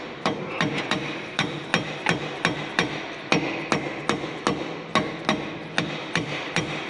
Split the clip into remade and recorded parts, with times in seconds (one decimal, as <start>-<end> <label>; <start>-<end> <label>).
0.0-1.7 remade; 1.7-5.8 recorded; 5.8-6.9 remade